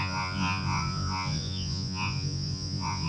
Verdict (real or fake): fake